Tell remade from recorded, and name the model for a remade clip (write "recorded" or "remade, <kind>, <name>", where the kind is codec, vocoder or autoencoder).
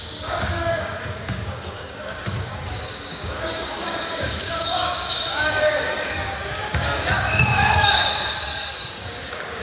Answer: remade, codec, DAC